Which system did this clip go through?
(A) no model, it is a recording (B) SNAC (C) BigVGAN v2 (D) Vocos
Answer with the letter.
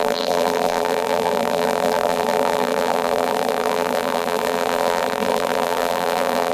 C